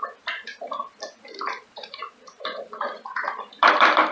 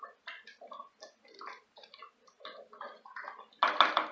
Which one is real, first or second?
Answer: second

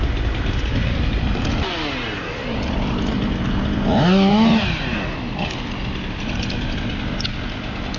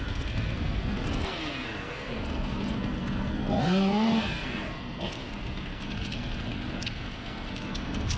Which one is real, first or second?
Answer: first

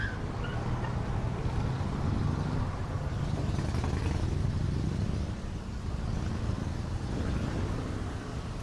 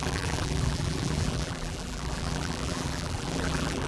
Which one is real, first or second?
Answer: first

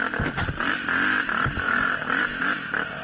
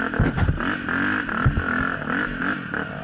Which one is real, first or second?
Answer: second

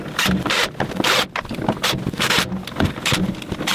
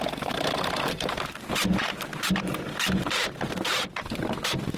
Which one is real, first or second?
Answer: first